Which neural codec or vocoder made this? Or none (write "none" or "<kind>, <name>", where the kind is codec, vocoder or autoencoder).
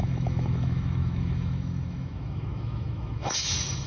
autoencoder, DAC-VAE